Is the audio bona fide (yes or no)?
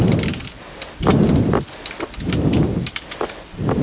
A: yes